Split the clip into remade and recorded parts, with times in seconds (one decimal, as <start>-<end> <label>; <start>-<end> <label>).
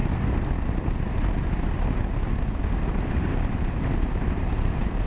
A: 0.0-3.1 recorded; 3.1-5.1 remade